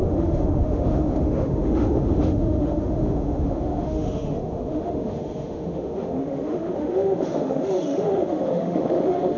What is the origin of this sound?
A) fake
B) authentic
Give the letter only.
A